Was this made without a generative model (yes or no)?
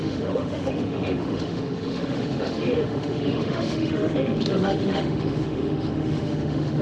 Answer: no